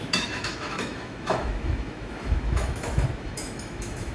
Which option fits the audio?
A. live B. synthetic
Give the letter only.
B